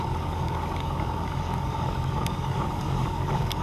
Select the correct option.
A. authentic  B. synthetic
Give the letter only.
B